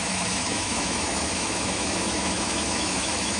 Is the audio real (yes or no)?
no